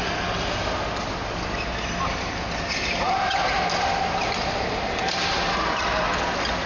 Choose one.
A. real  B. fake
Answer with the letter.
A